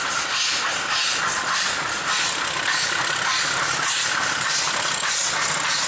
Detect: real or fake real